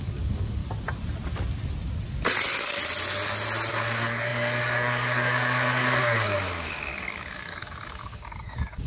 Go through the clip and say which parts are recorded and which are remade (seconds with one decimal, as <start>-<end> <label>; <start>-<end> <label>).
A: 0.0-0.6 remade; 0.6-3.7 recorded; 3.7-8.9 remade